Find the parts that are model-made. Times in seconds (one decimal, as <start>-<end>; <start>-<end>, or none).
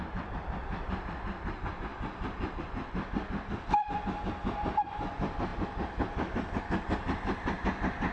none